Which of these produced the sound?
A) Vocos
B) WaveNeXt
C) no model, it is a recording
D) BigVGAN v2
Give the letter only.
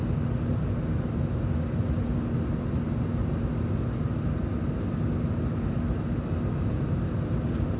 C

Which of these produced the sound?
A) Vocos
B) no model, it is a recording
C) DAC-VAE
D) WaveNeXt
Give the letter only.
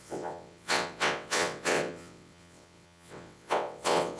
D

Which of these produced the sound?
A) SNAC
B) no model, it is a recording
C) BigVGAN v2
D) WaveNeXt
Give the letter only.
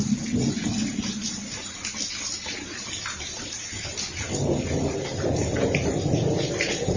B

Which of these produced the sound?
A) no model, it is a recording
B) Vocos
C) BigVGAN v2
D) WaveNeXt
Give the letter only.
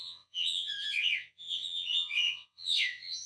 D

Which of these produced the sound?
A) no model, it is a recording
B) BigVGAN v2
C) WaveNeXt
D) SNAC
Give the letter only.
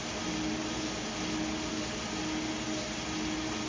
A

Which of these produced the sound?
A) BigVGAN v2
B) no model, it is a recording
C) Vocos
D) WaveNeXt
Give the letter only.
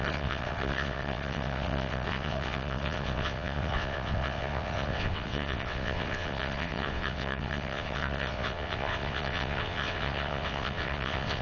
D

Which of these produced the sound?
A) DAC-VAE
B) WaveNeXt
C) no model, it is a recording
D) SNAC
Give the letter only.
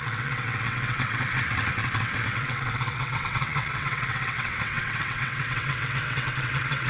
B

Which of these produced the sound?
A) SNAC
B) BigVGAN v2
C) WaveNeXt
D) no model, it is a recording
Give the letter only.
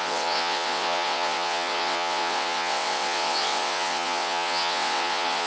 C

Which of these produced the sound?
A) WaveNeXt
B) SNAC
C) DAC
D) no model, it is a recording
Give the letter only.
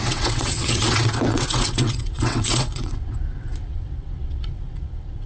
A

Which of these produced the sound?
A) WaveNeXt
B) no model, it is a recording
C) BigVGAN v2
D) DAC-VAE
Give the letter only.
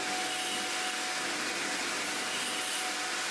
B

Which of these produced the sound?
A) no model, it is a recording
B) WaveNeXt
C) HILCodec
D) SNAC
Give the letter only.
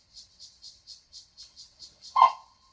B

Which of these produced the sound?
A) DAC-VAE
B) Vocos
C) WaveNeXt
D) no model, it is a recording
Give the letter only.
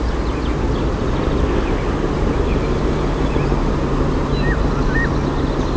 D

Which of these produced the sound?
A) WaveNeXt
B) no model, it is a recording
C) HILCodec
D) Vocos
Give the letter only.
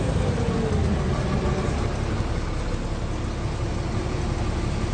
B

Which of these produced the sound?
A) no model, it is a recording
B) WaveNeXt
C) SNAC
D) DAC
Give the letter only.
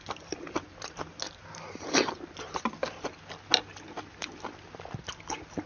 A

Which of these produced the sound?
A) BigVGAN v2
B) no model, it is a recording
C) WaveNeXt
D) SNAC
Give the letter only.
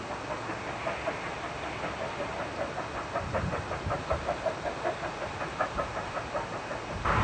B